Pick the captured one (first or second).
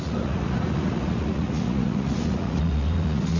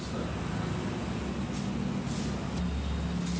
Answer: second